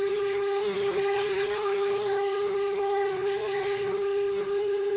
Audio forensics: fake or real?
fake